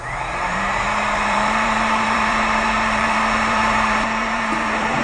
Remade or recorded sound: remade